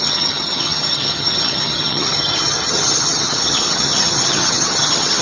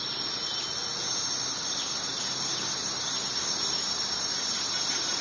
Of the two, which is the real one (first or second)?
second